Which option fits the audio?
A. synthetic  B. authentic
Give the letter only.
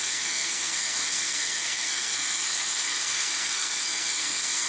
A